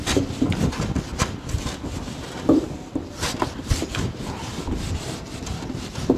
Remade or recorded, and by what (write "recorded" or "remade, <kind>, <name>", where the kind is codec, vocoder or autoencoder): remade, vocoder, BigVGAN v2